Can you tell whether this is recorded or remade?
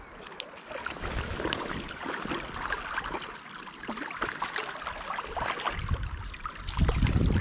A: recorded